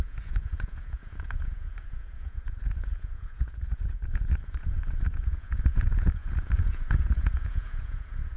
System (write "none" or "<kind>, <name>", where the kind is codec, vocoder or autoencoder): vocoder, Vocos